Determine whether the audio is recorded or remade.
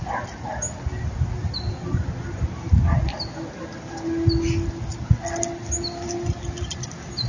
recorded